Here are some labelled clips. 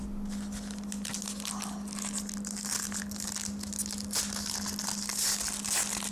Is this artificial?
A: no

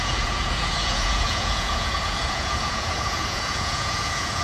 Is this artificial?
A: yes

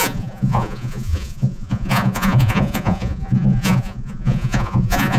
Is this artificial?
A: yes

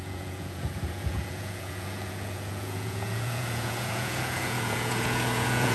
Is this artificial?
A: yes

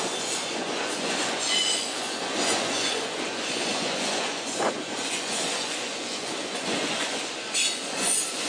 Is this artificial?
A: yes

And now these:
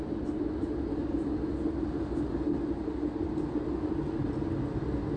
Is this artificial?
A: no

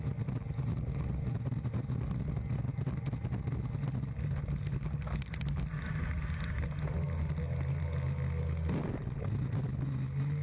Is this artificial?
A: no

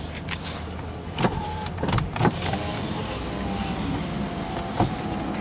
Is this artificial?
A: no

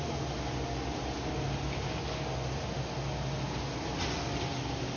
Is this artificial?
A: no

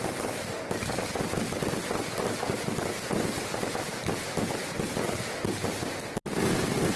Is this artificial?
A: no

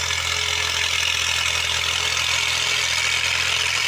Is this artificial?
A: no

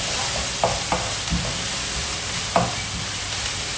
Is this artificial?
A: no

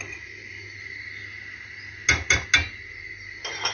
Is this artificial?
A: no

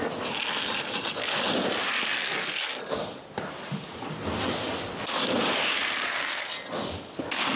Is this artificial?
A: no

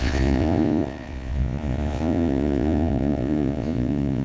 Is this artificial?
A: yes